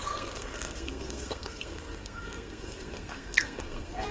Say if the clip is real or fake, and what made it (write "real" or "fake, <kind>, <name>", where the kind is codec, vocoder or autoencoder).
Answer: fake, codec, SNAC